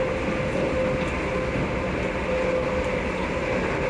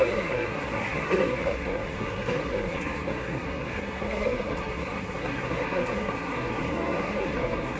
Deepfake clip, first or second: second